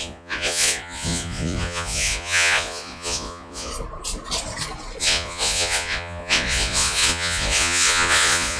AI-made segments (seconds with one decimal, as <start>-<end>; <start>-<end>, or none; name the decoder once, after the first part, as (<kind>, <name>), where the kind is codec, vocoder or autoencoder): 0.0-3.7 (vocoder, Vocos); 5.0-8.6